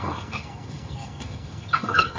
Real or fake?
fake